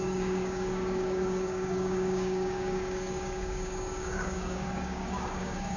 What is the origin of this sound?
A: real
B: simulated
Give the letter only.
B